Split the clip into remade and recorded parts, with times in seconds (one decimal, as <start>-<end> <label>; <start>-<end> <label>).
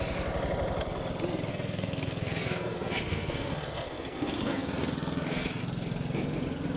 0.0-1.5 recorded; 1.5-5.6 remade; 5.6-6.8 recorded